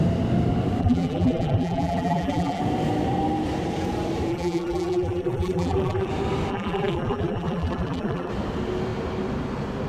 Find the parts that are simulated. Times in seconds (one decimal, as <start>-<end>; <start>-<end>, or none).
0.8-2.6; 4.3-6.1; 6.5-8.3